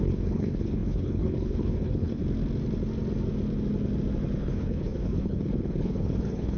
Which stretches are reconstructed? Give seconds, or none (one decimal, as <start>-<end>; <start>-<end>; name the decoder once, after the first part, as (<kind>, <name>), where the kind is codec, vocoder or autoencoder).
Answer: 0.0-2.2 (codec, HILCodec); 4.4-6.6